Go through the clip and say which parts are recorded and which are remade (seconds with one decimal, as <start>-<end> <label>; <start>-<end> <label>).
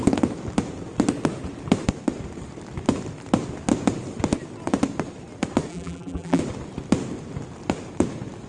0.0-5.7 recorded; 5.7-6.4 remade; 6.4-8.5 recorded